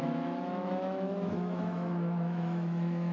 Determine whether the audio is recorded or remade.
remade